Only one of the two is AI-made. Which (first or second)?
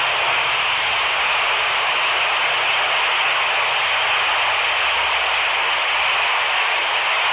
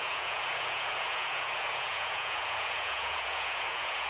second